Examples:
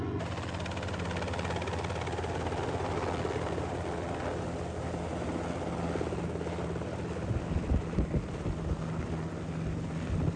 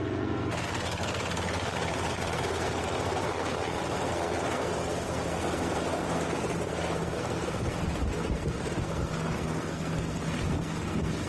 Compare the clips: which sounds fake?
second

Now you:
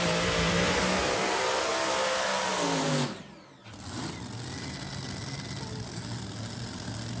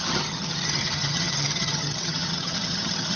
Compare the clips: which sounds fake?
second